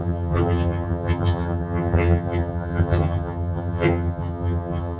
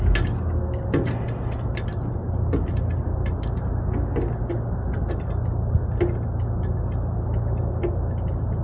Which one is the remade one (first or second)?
first